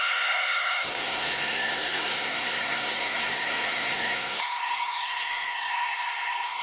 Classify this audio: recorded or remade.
remade